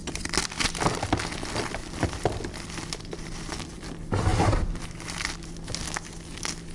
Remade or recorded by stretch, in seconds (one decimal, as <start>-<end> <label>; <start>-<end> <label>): 0.0-1.8 recorded; 1.8-3.8 remade; 3.8-6.7 recorded